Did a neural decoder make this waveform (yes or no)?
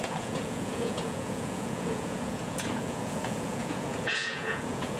yes